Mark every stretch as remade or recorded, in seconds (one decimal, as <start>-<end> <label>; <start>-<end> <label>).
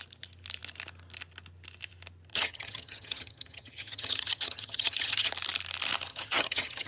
0.0-2.3 recorded; 2.3-5.3 remade; 5.3-6.1 recorded; 6.1-6.9 remade